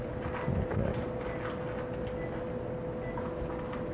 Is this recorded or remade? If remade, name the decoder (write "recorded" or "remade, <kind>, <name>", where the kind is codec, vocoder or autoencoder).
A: recorded